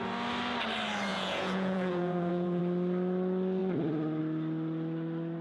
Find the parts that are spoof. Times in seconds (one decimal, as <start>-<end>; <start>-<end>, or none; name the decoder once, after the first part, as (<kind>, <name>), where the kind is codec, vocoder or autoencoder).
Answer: 1.1-2.6 (vocoder, Vocos)